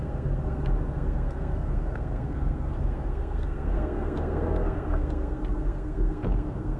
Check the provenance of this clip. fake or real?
fake